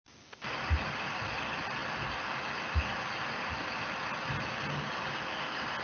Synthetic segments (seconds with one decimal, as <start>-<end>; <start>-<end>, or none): none